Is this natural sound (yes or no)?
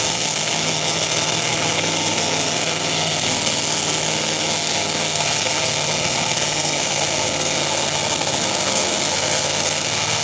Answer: no